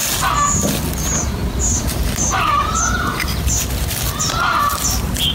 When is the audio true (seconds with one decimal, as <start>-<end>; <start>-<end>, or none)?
0.0-5.3